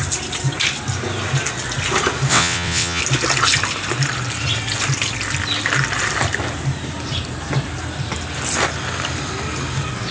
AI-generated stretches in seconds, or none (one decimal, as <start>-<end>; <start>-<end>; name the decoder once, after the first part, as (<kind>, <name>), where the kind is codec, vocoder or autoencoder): 2.3-3.0 (vocoder, WaveNeXt)